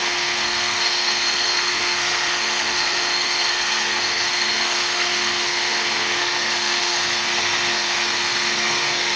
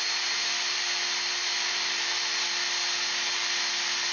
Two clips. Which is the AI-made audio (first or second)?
first